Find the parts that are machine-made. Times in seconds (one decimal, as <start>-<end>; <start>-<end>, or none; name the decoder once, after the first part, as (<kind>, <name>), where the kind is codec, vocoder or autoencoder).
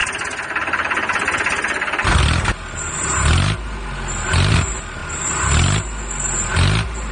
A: none